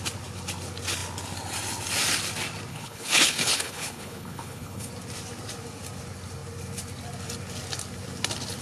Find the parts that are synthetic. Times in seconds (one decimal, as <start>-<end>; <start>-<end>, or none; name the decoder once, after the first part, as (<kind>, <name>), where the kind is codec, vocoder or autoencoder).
2.7-4.9 (codec, HILCodec)